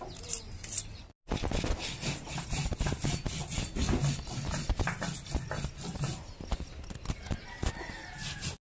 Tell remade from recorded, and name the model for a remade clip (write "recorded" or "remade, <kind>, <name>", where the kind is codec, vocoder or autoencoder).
recorded